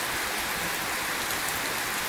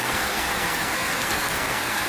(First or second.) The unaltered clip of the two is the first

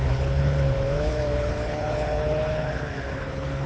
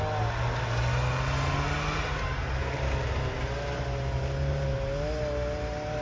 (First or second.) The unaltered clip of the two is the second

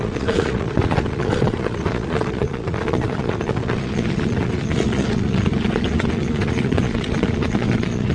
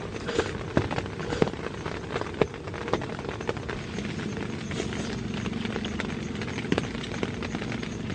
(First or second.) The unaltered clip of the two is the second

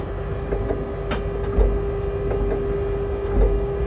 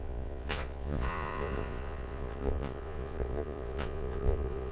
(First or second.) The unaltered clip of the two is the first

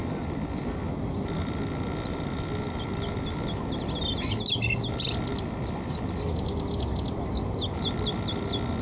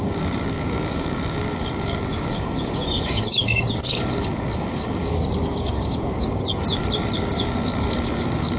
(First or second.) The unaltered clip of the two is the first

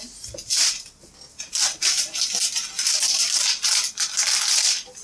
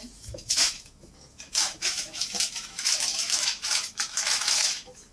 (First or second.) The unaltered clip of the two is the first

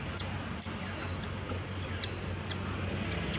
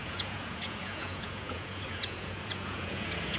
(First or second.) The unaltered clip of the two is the first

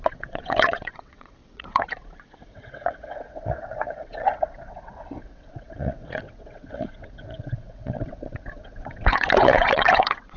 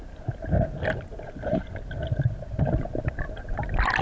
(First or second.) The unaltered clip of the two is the second